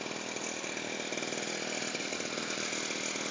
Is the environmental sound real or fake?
real